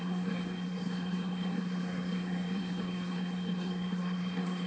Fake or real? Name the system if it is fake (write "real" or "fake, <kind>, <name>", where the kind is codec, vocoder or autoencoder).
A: fake, codec, SNAC